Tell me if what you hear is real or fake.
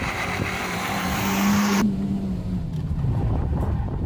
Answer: fake